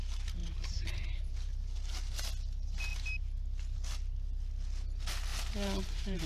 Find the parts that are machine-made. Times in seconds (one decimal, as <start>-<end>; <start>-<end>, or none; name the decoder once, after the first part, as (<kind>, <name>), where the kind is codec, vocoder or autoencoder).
0.4-1.3 (vocoder, BigVGAN v2); 5.3-6.3